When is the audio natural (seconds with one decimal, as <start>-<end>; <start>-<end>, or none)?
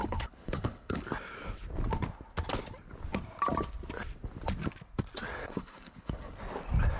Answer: 1.0-5.4; 6.2-7.0